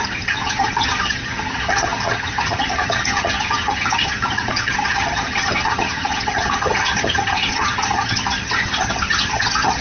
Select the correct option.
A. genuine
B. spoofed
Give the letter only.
B